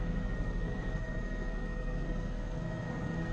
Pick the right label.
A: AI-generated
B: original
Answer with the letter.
A